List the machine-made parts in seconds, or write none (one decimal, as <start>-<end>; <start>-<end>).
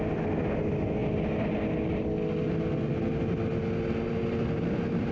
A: none